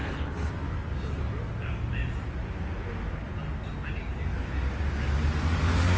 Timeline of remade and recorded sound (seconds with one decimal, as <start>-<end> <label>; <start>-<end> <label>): 0.0-0.5 remade; 0.5-6.0 recorded